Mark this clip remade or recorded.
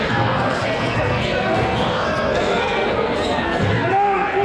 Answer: remade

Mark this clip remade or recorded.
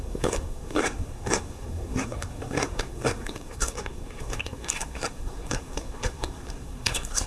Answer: remade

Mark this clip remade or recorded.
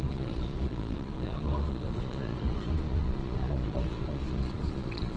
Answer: remade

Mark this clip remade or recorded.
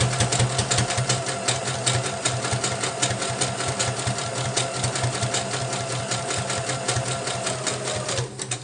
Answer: recorded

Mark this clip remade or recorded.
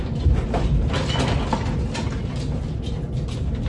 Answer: recorded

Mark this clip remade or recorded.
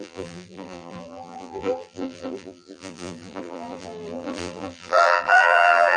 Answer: remade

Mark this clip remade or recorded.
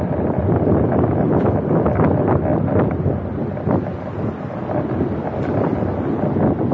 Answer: recorded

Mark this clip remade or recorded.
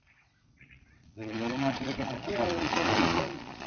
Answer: remade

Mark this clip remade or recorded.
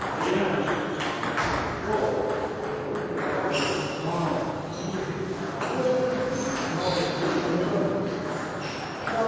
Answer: recorded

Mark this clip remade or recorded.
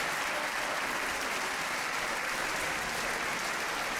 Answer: remade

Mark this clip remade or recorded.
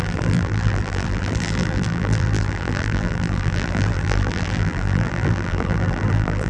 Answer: remade